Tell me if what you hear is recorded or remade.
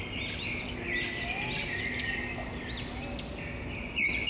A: recorded